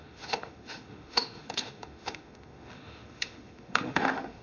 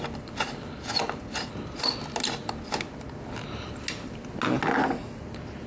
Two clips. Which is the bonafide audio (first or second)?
second